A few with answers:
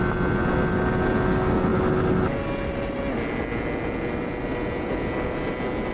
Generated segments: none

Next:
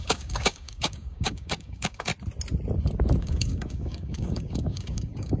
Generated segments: 0.0-2.1 (codec, DAC); 3.2-5.4

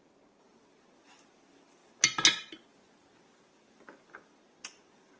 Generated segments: none

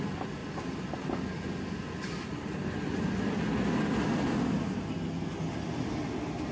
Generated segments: none